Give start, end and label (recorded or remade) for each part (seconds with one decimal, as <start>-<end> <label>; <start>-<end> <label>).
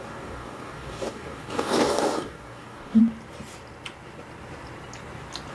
0.0-3.0 remade; 3.0-5.5 recorded